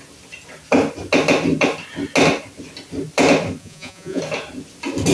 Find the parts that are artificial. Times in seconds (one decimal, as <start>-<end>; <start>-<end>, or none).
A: 3.6-4.2

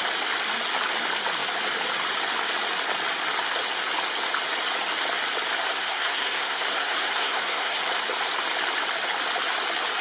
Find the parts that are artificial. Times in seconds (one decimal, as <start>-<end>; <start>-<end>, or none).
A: 5.6-7.8

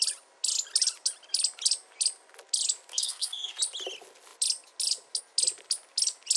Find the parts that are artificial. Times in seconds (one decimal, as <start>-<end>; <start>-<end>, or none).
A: 2.9-3.6

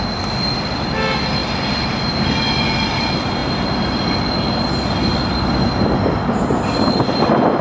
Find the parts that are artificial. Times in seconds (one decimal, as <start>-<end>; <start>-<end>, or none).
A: none

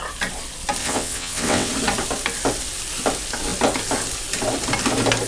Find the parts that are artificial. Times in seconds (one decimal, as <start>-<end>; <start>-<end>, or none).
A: 0.8-1.7

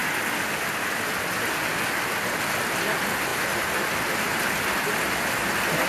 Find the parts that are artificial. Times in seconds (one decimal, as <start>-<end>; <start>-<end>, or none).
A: none